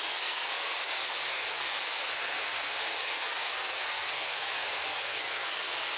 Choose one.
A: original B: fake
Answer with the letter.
B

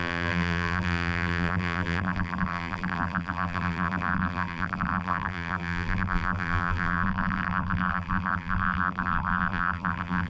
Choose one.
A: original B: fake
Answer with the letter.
B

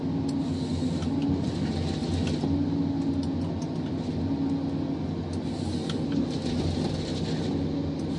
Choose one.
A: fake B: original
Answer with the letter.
B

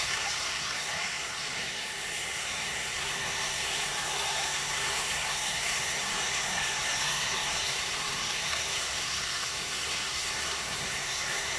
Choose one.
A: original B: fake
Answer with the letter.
B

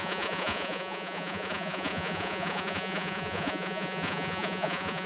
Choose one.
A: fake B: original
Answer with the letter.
A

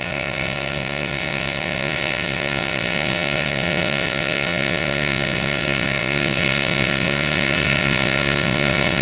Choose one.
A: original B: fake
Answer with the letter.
B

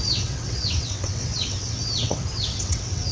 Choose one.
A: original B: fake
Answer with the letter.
B